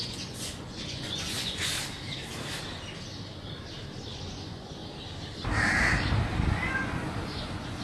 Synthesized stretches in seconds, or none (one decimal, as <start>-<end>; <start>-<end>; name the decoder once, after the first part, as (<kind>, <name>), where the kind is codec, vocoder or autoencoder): 0.0-1.7 (vocoder, Vocos); 4.1-4.8; 6.7-7.8